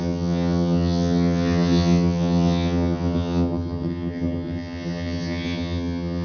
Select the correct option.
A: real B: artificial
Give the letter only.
B